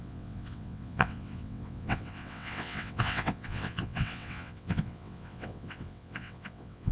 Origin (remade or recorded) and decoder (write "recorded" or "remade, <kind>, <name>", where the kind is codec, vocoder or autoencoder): remade, vocoder, WaveNeXt